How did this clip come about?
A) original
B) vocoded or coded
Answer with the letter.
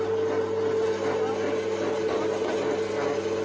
A